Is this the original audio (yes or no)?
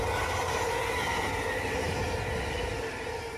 yes